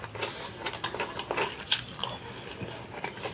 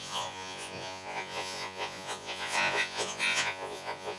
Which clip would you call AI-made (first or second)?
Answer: second